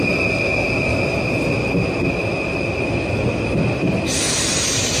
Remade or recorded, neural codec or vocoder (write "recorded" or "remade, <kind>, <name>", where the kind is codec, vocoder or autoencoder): recorded